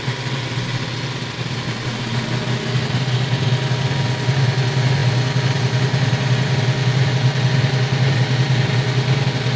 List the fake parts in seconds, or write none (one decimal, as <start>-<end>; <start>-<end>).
none